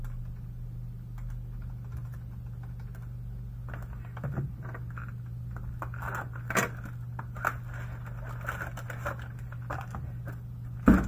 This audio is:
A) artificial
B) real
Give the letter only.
B